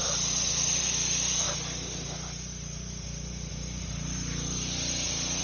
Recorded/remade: recorded